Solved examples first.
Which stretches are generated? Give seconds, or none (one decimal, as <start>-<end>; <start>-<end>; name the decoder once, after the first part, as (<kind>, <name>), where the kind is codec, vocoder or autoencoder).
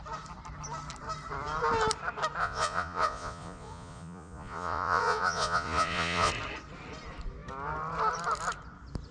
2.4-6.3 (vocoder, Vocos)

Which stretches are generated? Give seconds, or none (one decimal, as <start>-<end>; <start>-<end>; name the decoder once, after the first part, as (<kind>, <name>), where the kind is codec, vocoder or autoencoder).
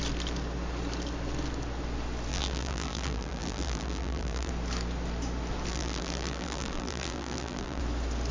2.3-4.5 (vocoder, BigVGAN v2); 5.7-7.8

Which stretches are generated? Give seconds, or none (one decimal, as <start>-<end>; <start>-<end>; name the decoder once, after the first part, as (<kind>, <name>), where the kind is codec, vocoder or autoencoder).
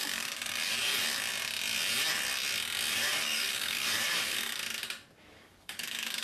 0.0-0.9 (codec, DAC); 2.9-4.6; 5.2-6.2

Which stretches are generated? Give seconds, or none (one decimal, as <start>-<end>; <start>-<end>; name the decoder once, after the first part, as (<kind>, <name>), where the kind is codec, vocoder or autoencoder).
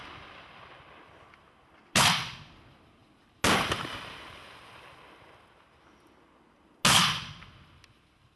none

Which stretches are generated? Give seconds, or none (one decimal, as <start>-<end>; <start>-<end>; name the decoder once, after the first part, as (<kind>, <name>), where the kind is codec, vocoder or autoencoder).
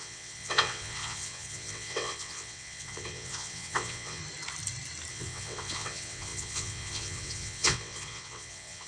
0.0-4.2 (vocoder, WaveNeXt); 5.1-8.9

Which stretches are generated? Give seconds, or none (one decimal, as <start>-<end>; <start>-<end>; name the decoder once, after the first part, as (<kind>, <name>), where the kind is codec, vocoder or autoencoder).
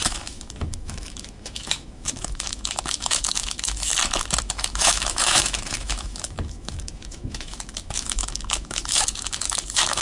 0.0-3.9 (autoencoder, DAC-VAE); 4.4-10.0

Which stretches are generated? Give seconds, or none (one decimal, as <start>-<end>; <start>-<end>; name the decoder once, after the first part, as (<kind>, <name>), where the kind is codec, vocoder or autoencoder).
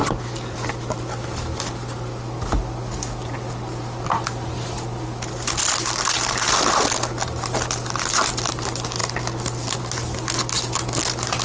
none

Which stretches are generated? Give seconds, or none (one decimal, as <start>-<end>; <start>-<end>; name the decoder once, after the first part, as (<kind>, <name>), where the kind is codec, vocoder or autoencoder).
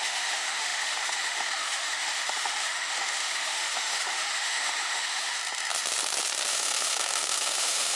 0.0-5.4 (autoencoder, DAC-VAE); 6.5-8.0